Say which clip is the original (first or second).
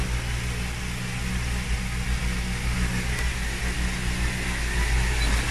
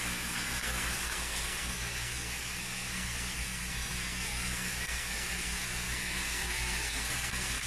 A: first